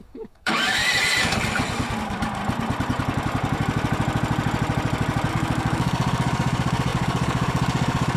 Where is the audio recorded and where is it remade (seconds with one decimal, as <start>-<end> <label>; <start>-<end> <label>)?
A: 0.0-0.8 remade; 0.8-2.0 recorded; 2.0-2.4 remade; 2.4-5.3 recorded; 5.3-8.2 remade